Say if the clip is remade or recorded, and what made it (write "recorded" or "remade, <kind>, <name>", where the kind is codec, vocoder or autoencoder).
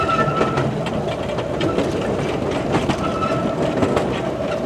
recorded